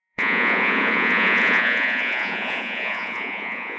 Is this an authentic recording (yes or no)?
no